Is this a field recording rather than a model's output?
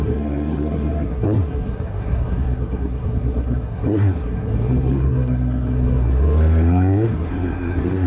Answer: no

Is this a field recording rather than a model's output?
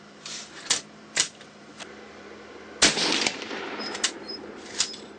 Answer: no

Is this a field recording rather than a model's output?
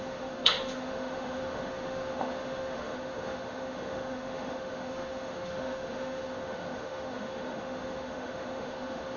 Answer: no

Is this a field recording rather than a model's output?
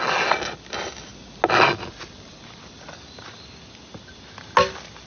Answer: yes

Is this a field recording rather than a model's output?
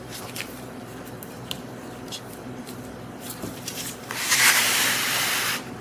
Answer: no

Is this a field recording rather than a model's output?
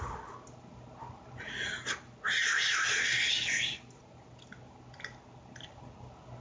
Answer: yes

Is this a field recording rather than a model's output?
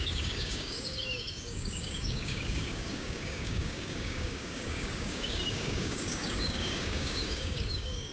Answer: no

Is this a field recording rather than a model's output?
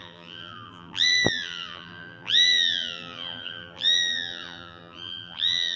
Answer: no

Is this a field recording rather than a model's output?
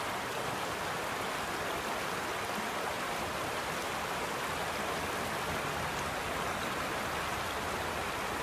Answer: yes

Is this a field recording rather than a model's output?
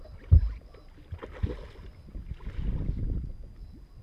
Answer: yes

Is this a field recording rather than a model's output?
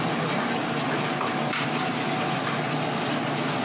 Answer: yes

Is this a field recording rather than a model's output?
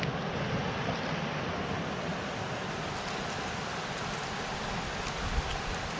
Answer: yes